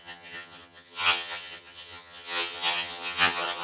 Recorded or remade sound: remade